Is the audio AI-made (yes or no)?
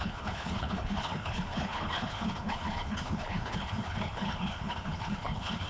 yes